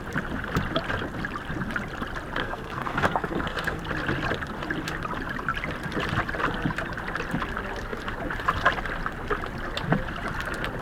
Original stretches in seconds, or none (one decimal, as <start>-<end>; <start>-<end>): 0.0-2.4; 3.8-10.8